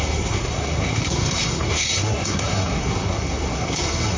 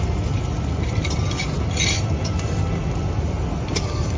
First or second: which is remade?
first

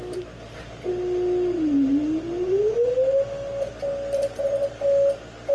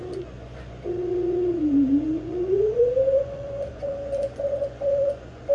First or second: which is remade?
second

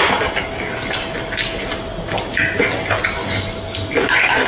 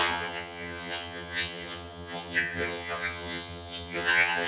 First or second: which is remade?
second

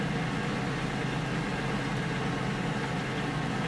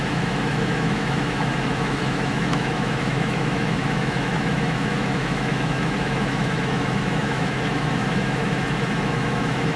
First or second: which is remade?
second